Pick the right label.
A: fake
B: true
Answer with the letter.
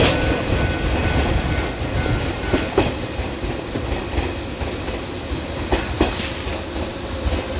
B